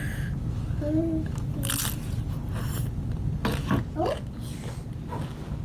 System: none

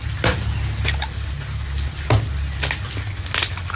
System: none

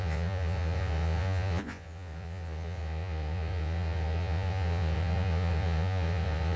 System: vocoder, Vocos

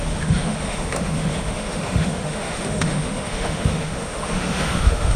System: autoencoder, DAC-VAE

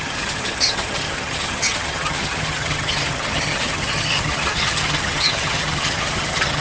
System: vocoder, HiFi-GAN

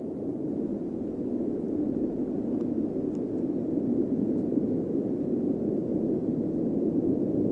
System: none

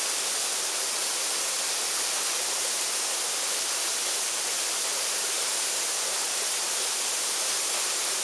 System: none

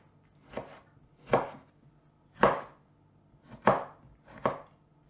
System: none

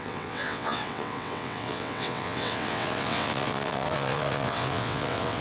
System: vocoder, WaveNeXt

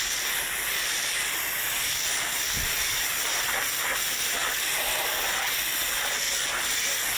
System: none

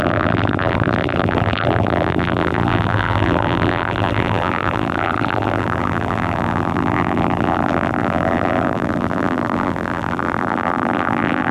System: vocoder, BigVGAN v2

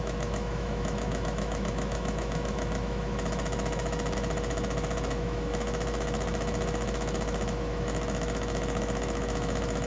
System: autoencoder, DAC-VAE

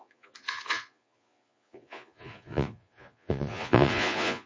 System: vocoder, Vocos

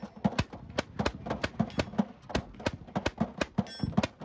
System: none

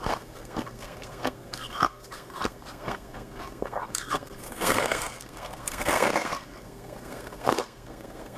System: codec, SNAC